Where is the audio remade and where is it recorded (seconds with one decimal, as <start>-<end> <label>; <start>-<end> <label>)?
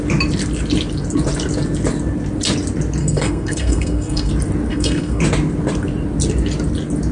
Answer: 0.0-3.0 recorded; 3.0-4.3 remade; 4.3-4.7 recorded; 4.7-5.2 remade; 5.2-7.1 recorded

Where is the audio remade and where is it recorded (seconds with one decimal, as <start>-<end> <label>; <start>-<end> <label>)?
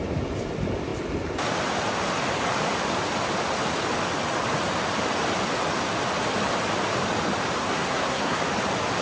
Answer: 0.0-7.6 recorded; 7.6-8.4 remade; 8.4-9.0 recorded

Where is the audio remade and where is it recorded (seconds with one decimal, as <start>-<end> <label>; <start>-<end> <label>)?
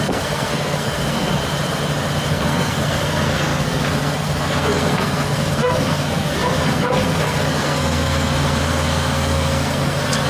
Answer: 0.0-1.4 remade; 1.4-2.3 recorded; 2.3-10.3 remade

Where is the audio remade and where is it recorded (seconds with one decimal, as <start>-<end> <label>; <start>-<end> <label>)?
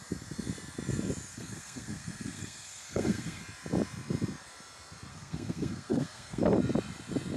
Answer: 0.0-1.3 recorded; 1.3-3.4 remade; 3.4-5.1 recorded; 5.1-6.4 remade; 6.4-7.4 recorded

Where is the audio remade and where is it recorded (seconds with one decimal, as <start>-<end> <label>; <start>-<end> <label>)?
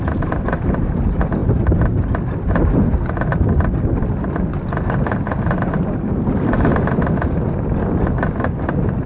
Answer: 0.0-9.1 recorded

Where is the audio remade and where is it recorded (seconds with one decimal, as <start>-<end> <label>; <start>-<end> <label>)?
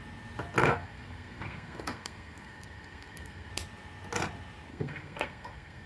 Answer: 0.0-0.6 recorded; 0.6-3.5 remade; 3.5-4.7 recorded; 4.7-5.9 remade